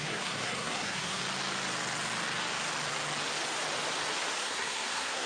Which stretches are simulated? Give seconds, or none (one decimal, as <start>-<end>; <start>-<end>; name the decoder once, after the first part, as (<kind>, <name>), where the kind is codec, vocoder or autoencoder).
0.0-1.2 (codec, SNAC); 4.4-5.3